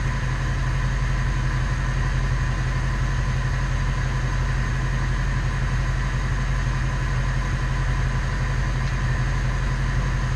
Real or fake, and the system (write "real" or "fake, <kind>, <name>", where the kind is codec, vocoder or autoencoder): real